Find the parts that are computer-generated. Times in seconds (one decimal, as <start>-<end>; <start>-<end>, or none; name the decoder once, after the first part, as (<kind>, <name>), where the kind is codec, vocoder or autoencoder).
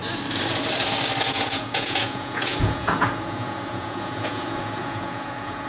1.2-5.7 (vocoder, Vocos)